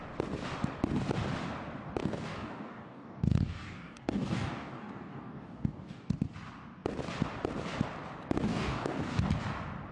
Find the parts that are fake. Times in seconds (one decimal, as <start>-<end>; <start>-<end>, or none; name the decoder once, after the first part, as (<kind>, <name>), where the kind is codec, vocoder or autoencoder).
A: 2.0-6.1 (codec, DAC); 8.5-9.3

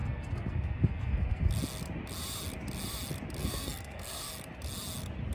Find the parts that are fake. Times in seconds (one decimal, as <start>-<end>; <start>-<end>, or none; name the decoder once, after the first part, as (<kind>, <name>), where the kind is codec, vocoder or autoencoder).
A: 0.0-1.5 (codec, SNAC); 3.4-4.3

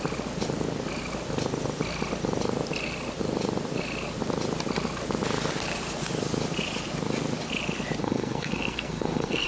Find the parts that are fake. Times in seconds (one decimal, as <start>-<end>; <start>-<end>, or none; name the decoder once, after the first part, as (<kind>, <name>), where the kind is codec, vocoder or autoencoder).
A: 8.0-9.5 (codec, SNAC)

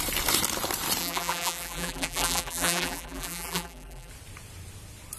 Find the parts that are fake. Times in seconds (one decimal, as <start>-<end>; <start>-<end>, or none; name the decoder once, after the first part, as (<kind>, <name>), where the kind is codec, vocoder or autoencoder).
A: 1.0-4.1 (vocoder, BigVGAN v2)

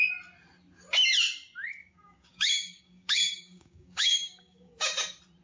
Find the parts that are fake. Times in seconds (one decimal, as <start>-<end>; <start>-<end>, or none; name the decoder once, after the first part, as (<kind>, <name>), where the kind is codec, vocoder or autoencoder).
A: 1.8-5.0 (codec, DAC)

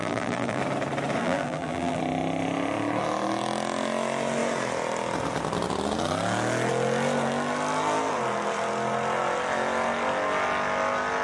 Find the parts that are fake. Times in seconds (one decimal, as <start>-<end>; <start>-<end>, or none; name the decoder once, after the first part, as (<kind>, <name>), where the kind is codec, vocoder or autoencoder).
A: 0.0-0.6 (vocoder, BigVGAN v2); 1.2-2.0